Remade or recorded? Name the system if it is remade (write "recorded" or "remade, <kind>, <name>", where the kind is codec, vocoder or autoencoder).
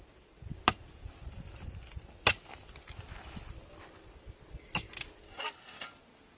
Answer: recorded